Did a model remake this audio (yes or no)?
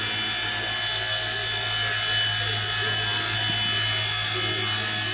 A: no